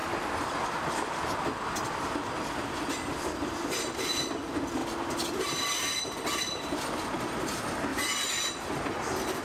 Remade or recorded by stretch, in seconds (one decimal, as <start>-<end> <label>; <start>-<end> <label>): 0.0-9.4 recorded